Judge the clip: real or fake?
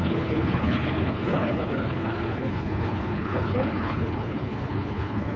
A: fake